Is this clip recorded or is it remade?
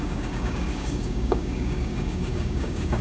remade